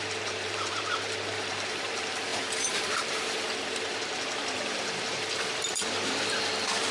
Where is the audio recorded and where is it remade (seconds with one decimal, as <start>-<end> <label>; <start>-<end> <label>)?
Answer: 0.0-6.9 remade